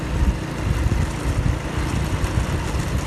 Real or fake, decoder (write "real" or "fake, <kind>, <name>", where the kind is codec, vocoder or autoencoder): real